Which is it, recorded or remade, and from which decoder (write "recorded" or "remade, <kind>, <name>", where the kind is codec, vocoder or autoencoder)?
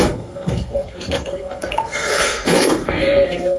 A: remade, codec, SNAC